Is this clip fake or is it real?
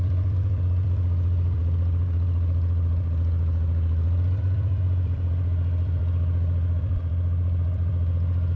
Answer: fake